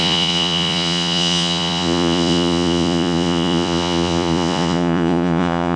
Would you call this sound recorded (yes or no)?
no